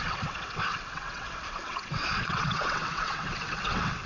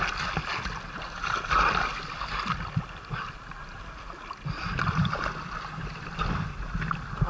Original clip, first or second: second